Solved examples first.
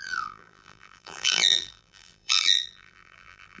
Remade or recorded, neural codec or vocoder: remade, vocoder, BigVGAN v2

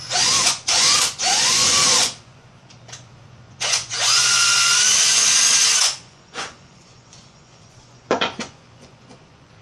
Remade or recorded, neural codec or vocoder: remade, vocoder, Vocos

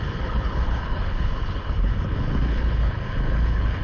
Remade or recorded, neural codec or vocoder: remade, codec, HILCodec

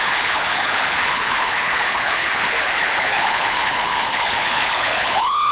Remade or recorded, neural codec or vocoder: remade, codec, HILCodec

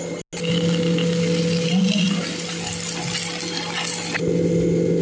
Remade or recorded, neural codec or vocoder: recorded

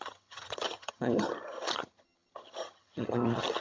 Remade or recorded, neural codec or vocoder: remade, vocoder, HiFi-GAN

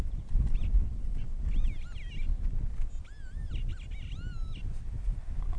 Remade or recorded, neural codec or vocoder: recorded